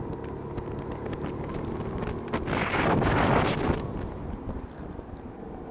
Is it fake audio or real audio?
real